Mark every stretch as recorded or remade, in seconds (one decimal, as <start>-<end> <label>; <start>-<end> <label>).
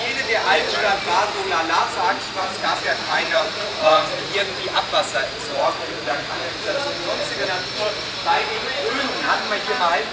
0.0-2.4 recorded; 2.4-4.8 remade; 4.8-5.5 recorded; 5.5-6.8 remade; 6.8-10.1 recorded